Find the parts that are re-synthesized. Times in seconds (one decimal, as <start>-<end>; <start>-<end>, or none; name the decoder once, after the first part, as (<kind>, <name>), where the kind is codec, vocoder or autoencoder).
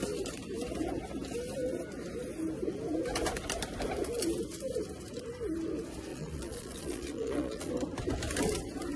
6.1-7.7 (vocoder, Vocos)